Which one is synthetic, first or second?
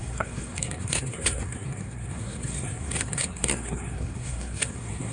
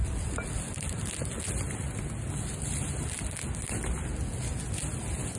first